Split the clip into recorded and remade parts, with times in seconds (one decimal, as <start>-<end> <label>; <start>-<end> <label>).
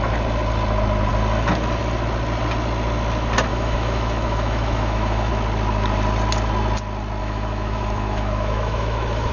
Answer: 0.0-3.5 recorded; 3.5-5.3 remade; 5.3-7.2 recorded; 7.2-9.3 remade